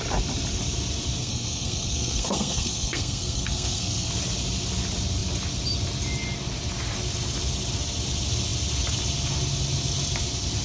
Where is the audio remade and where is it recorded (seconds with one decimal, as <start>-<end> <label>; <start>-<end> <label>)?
0.0-1.2 recorded; 1.2-4.1 remade; 4.1-10.6 recorded